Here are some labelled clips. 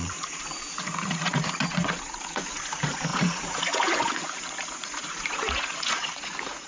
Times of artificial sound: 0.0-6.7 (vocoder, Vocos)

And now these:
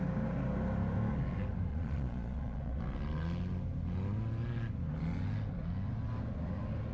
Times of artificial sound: 1.7-2.8 (vocoder, Vocos)

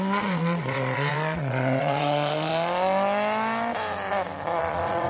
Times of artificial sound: 0.0-2.5 (vocoder, Vocos); 4.6-5.1

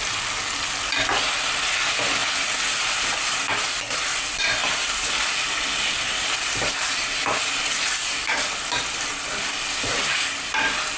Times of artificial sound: none

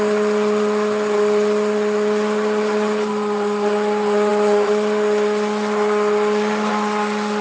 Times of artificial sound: none

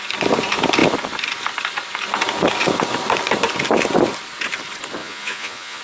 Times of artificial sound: 5.0-5.8 (vocoder, Vocos)

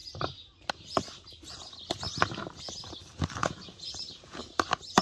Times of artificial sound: 3.4-4.4 (vocoder, Vocos)